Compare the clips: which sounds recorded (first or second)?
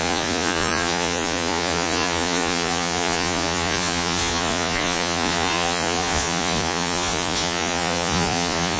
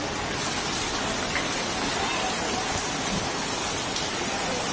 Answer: second